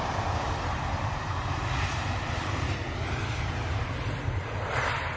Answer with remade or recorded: remade